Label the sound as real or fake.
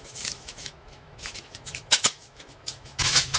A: fake